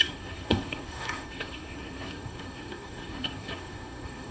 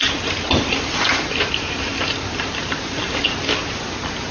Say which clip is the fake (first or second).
first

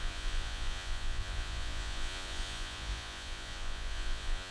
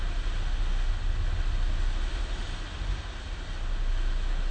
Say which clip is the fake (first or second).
first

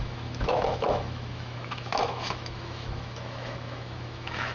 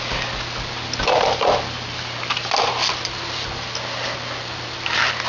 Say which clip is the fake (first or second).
first